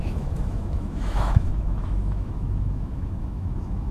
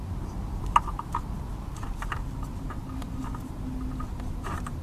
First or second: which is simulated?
first